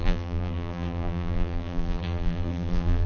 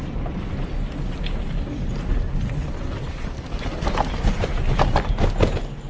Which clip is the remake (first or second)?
first